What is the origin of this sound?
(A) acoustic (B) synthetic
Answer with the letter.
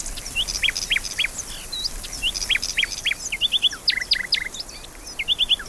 A